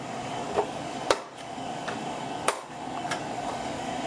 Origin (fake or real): fake